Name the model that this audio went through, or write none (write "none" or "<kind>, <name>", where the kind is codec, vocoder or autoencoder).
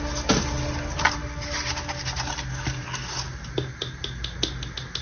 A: none